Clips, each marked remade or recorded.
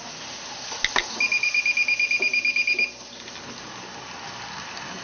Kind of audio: recorded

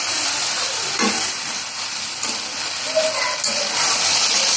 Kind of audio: recorded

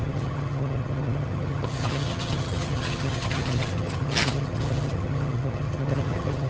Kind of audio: remade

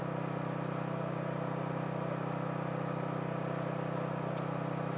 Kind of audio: recorded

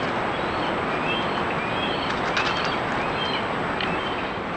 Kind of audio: recorded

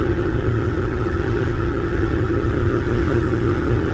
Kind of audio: remade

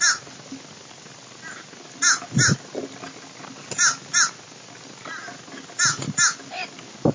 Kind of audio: recorded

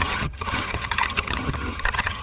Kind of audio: remade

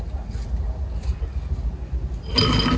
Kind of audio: recorded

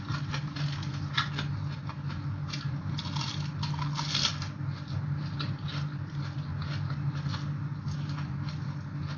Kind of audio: recorded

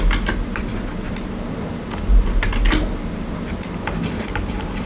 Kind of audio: recorded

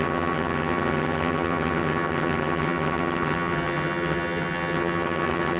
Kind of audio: remade